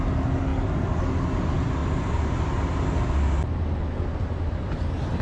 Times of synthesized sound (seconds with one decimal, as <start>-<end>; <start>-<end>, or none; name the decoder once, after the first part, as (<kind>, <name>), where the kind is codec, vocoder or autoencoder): none